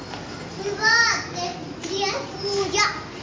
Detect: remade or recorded recorded